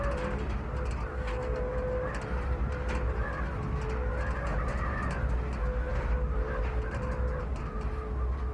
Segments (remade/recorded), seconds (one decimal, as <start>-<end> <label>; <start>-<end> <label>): 0.0-1.1 recorded; 1.1-1.6 remade; 1.6-8.5 recorded